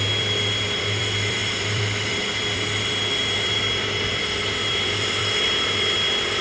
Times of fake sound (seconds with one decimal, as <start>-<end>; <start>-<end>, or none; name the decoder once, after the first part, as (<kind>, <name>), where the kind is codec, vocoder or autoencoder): 0.0-6.4 (vocoder, BigVGAN v2)